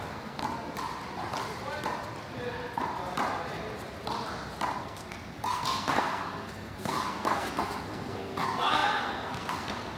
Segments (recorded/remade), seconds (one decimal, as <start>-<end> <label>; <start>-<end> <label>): 0.0-0.4 remade; 0.4-4.8 recorded; 4.8-10.0 remade